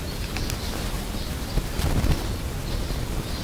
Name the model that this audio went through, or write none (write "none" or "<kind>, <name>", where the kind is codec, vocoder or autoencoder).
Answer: none